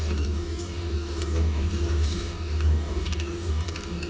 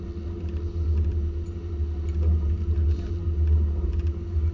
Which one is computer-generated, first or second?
first